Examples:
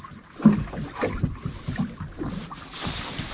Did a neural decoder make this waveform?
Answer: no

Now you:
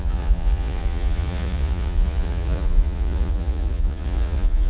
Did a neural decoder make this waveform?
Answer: yes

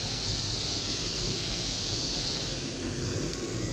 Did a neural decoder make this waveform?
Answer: yes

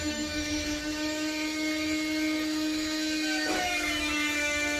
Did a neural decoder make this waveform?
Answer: yes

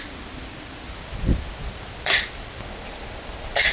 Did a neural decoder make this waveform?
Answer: no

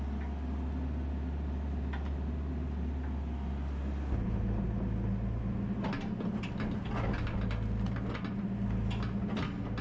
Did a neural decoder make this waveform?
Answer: no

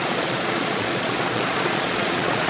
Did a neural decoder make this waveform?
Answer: yes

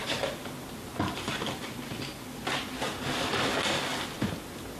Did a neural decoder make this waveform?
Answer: no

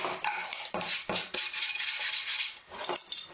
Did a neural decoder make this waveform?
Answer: yes